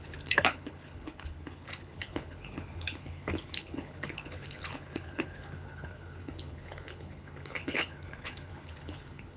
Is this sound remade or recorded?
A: remade